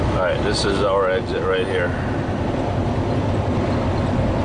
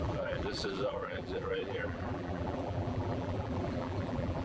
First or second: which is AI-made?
second